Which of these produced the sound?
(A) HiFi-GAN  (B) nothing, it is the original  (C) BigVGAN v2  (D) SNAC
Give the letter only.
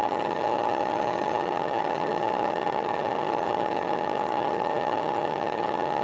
A